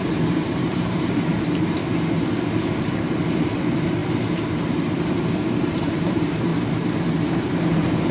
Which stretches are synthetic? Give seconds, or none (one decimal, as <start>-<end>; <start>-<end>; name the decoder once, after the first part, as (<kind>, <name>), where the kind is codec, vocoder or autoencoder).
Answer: 0.0-1.8 (vocoder, BigVGAN v2); 2.9-6.5; 7.4-8.1